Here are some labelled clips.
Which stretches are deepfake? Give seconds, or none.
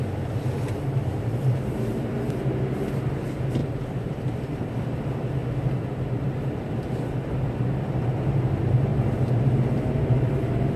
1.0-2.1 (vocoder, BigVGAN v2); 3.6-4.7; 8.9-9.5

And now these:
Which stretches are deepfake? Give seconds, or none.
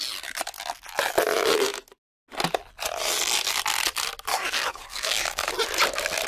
4.3-5.5 (codec, DAC)